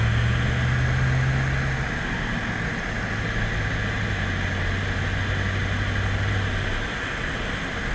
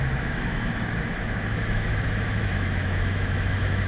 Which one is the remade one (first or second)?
second